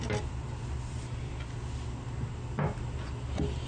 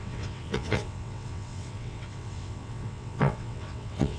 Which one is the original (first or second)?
first